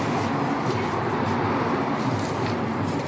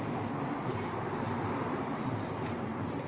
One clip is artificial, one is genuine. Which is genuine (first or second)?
first